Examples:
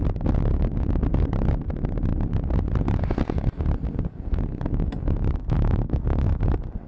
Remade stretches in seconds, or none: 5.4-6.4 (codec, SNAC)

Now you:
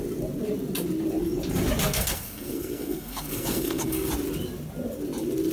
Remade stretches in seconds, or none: 1.8-4.1 (codec, SNAC)

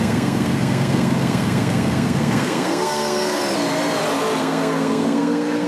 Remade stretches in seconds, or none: 0.0-3.4 (codec, SNAC); 4.4-5.7